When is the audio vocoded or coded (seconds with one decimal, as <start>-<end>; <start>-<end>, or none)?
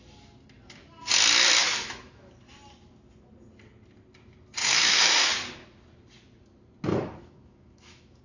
1.6-2.3; 4.6-5.3; 6.9-8.2